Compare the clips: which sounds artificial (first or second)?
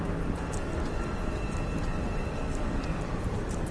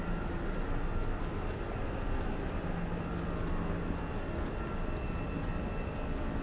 first